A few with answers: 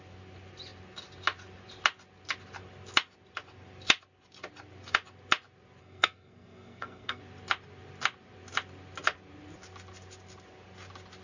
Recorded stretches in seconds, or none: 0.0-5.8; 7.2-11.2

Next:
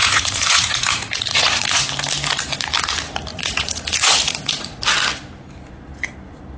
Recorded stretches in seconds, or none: 1.9-3.3; 4.8-6.6

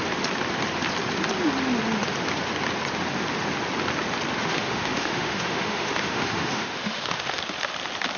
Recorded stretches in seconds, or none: 0.0-4.4; 7.4-8.2

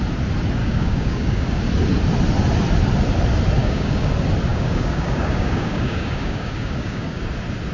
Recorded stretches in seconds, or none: 0.0-0.6; 1.6-3.6; 4.1-4.5; 7.2-7.7

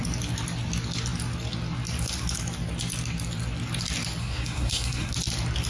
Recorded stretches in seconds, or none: 0.0-4.2; 5.1-5.7

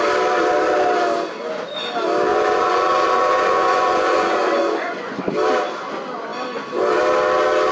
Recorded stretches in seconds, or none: 0.0-2.3; 5.2-7.7